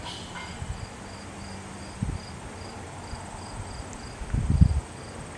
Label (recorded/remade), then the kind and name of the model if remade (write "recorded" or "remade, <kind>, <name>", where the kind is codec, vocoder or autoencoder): recorded